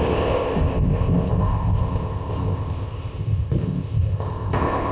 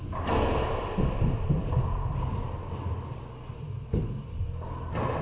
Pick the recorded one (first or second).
second